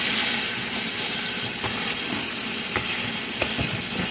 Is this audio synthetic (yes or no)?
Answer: no